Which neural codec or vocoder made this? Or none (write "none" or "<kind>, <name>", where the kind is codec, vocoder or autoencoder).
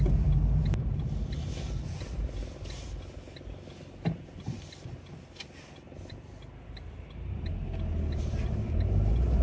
none